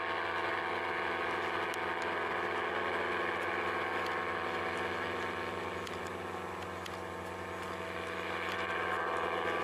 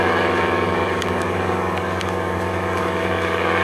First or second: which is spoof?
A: second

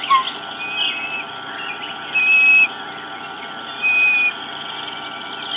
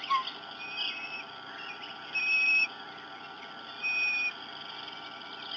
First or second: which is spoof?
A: second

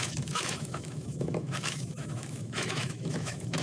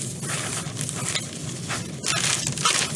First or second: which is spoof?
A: first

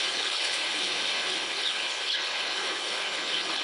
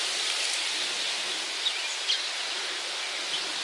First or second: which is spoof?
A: first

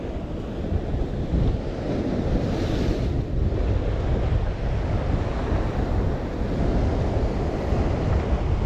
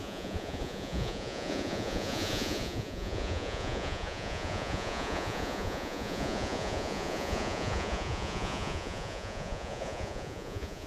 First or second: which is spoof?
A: second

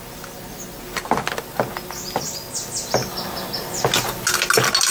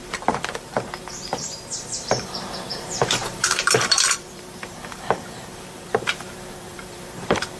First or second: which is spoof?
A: second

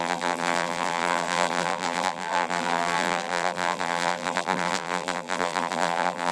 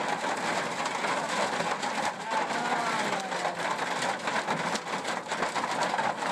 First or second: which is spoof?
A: first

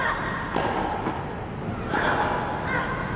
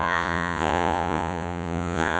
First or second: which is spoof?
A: second